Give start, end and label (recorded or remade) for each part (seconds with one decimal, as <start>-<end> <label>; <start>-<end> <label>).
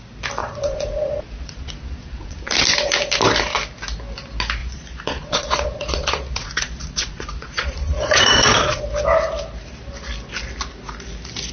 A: 0.0-0.4 recorded; 0.4-2.5 remade; 2.5-4.6 recorded; 4.6-8.8 remade; 8.8-11.5 recorded